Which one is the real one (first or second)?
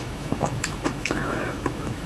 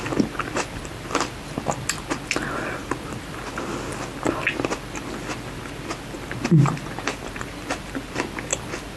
second